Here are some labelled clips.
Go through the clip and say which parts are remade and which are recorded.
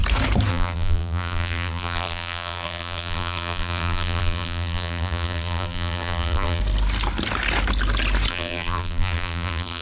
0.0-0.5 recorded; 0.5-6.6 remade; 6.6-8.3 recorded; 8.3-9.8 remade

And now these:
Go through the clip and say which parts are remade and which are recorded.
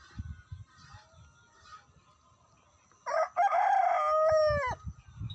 0.0-5.3 recorded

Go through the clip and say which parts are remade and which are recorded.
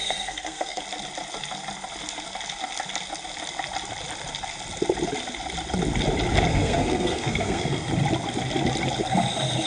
0.0-0.8 remade; 0.8-6.5 recorded; 6.5-7.9 remade; 7.9-9.7 recorded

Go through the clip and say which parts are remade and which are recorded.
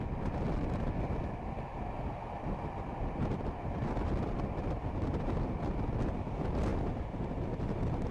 0.0-8.1 recorded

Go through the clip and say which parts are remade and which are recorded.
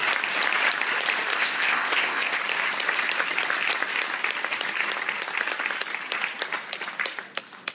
0.0-1.3 recorded; 1.3-2.4 remade; 2.4-7.7 recorded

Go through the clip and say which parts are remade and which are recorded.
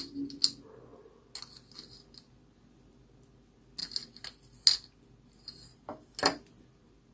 0.0-7.1 recorded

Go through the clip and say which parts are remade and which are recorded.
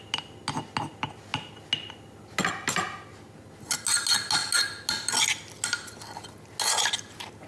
0.0-7.5 recorded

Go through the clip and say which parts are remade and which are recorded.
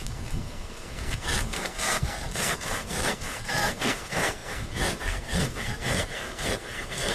0.0-7.1 remade